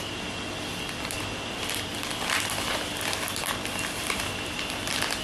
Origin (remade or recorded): recorded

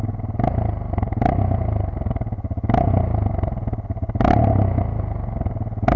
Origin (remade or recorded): recorded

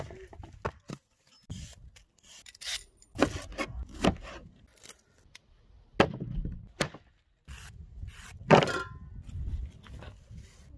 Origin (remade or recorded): recorded